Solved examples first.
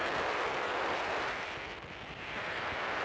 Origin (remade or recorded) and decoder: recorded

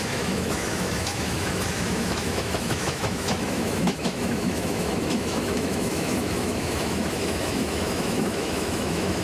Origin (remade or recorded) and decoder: remade, autoencoder, DAC-VAE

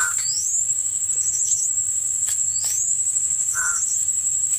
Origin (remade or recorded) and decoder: remade, autoencoder, DAC-VAE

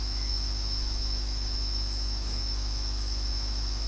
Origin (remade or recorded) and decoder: remade, autoencoder, DAC-VAE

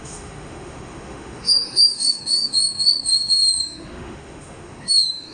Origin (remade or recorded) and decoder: remade, autoencoder, DAC-VAE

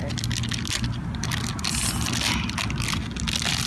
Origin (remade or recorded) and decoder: recorded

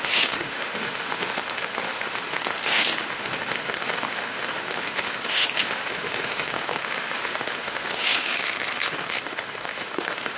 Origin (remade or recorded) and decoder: remade, autoencoder, DAC-VAE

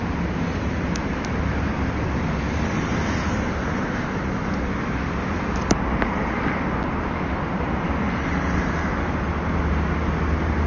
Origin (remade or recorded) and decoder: recorded